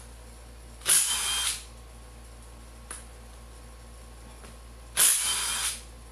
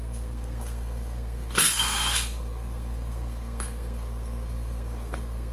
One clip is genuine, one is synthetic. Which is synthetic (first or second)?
second